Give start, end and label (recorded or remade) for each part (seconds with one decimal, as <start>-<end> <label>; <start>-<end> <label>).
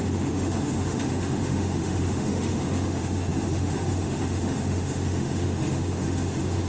0.0-6.7 remade